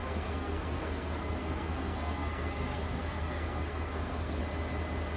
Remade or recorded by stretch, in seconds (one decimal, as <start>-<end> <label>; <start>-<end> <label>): 0.0-4.4 remade; 4.4-5.2 recorded